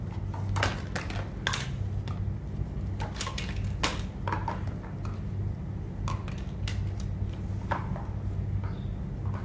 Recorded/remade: recorded